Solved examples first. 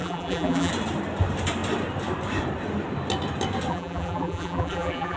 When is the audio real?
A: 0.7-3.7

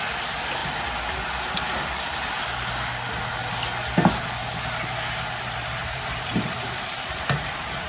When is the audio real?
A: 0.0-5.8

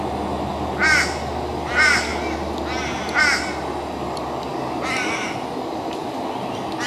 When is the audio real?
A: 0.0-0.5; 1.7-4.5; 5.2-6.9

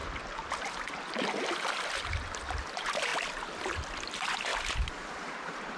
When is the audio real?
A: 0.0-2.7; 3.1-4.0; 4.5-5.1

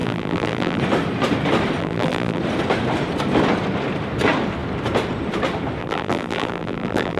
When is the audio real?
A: 0.8-1.8; 2.4-5.8

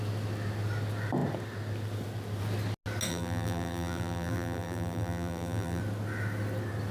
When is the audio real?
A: 0.0-3.1; 5.8-6.9

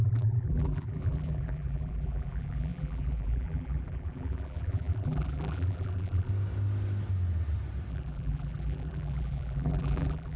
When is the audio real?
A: 6.3-7.9